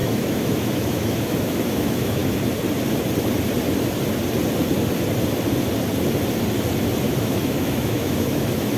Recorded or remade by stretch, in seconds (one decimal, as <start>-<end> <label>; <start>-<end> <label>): 0.0-2.2 remade; 2.2-7.2 recorded; 7.2-8.8 remade